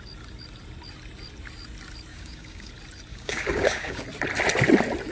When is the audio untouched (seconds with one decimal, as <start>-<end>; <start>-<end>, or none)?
0.0-2.1; 2.7-3.1; 4.0-5.1